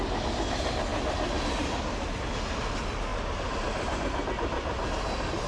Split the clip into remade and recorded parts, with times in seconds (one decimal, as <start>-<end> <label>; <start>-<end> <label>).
0.0-5.5 recorded